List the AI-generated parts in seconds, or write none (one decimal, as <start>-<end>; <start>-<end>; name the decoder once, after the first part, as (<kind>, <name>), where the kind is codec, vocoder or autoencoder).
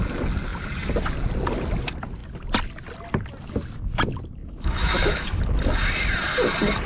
4.4-5.4 (autoencoder, DAC-VAE)